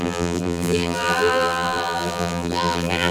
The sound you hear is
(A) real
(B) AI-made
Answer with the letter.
B